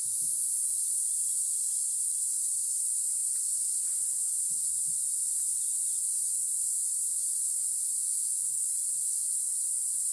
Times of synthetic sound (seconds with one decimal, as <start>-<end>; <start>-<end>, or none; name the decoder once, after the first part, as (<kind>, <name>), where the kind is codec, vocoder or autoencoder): 8.0-8.7 (autoencoder, DAC-VAE)